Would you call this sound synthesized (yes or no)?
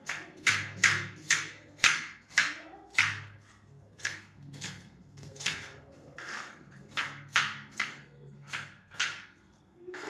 yes